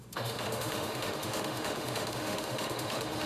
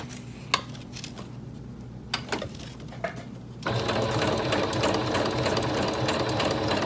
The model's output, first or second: first